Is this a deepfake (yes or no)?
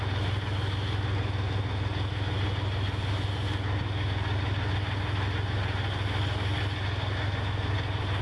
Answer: no